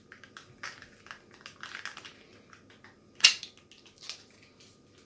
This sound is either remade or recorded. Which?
recorded